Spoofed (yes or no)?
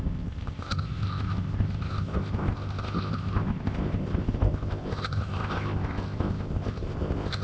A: yes